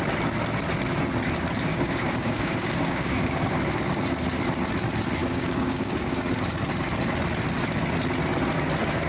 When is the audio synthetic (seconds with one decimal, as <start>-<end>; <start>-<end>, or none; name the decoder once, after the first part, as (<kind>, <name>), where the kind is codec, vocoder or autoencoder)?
1.7-3.6 (codec, DAC); 5.2-6.3